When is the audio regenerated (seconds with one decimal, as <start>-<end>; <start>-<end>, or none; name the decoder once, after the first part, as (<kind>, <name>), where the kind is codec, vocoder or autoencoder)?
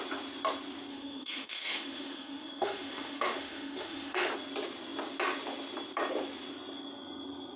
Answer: 0.9-4.3 (autoencoder, DAC-VAE)